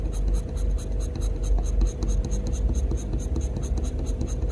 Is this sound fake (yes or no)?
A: no